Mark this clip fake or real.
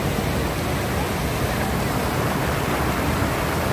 real